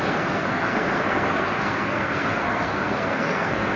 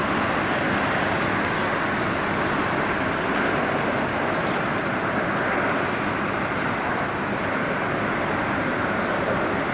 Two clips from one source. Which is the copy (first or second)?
first